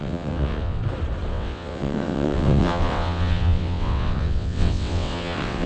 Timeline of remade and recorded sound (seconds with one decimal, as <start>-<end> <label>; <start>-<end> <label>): 0.0-0.8 remade; 0.8-1.3 recorded; 1.3-5.7 remade